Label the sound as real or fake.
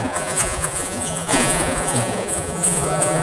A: fake